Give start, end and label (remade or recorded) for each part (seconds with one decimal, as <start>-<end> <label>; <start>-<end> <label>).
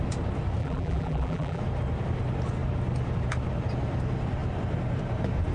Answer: 0.0-0.6 recorded; 0.6-1.6 remade; 1.6-5.5 recorded